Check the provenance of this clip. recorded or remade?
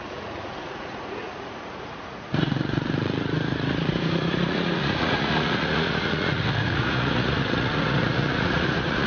remade